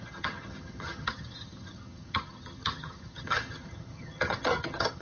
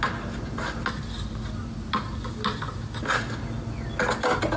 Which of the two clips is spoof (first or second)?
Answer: first